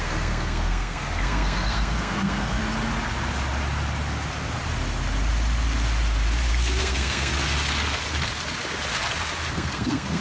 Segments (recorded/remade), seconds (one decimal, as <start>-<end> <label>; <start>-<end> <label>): 0.0-2.6 remade; 2.6-6.5 recorded; 6.5-7.3 remade; 7.3-9.5 recorded; 9.5-10.2 remade